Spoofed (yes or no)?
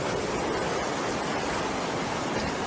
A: no